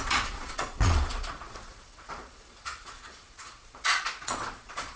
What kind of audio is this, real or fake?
fake